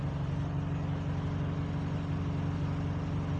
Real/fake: real